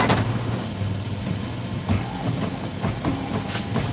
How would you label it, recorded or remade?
recorded